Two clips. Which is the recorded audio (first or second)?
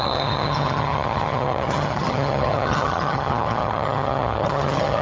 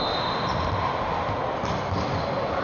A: second